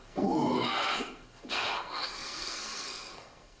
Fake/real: fake